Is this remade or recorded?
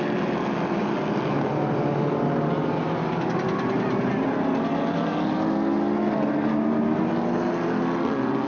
recorded